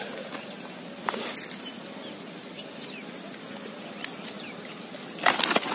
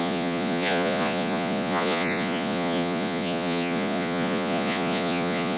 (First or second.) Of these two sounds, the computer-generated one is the second